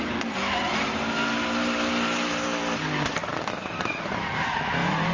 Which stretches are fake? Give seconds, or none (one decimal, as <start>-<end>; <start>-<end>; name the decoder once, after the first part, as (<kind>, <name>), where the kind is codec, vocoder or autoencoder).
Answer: none